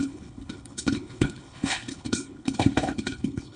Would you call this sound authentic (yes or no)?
no